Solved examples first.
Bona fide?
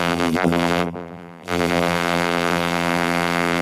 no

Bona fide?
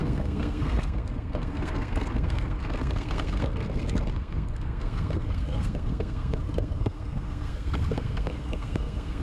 no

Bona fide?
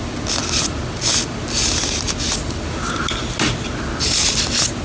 yes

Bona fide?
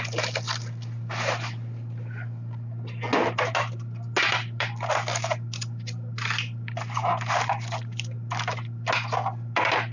yes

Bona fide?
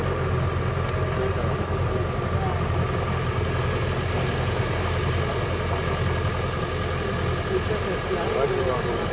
yes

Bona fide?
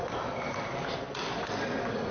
yes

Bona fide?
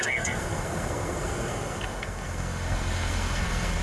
no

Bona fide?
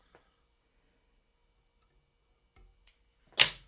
yes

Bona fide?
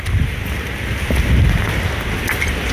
yes